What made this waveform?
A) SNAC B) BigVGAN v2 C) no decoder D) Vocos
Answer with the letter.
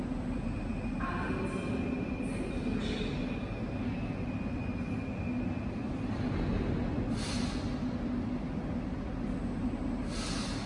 C